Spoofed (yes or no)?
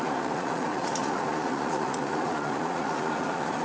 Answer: yes